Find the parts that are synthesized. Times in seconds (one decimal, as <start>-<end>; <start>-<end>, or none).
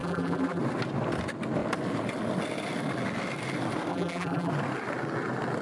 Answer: 0.0-0.6; 3.9-4.5